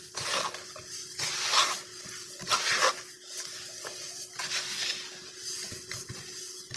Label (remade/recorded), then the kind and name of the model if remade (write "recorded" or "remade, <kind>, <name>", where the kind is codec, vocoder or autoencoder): recorded